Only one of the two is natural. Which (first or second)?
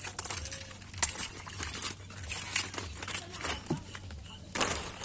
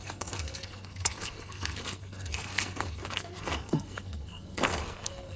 first